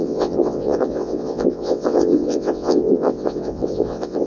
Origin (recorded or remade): remade